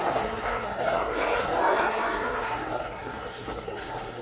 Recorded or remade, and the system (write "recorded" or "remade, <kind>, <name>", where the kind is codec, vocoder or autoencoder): remade, codec, SNAC